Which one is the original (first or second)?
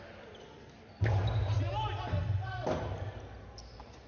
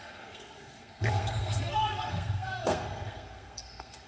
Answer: first